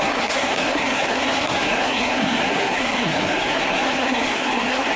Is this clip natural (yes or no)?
no